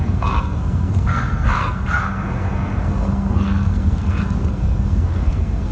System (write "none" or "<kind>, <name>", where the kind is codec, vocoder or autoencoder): codec, SNAC